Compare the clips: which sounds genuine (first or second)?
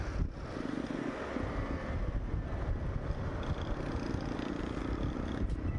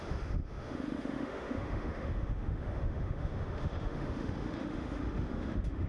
first